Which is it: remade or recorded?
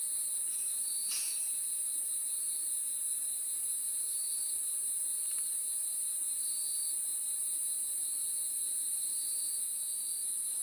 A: remade